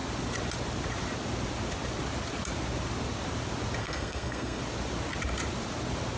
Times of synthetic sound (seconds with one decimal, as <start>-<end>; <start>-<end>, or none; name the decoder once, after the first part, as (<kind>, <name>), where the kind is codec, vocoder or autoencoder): 3.8-4.6 (codec, SNAC)